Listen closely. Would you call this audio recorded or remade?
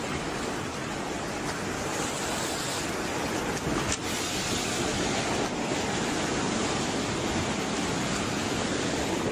recorded